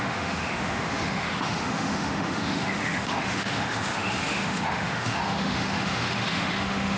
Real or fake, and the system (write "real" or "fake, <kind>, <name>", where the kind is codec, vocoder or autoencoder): fake, autoencoder, DAC-VAE